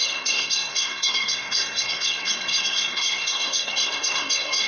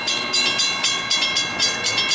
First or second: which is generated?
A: first